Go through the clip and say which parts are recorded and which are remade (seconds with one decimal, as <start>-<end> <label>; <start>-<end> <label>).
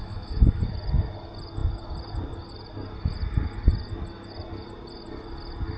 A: 0.0-0.6 remade; 0.6-5.8 recorded